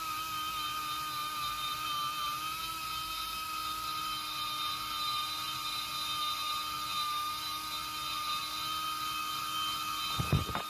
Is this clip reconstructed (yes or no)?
no